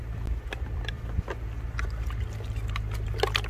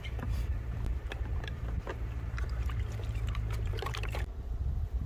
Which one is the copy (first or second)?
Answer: second